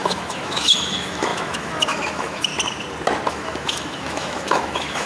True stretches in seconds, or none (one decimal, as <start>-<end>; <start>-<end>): 2.5-3.3